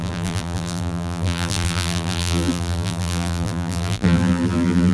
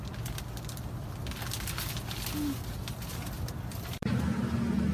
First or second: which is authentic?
second